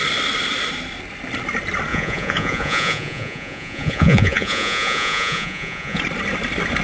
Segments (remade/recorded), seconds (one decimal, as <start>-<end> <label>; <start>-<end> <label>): 0.0-1.9 recorded; 1.9-6.0 remade; 6.0-6.8 recorded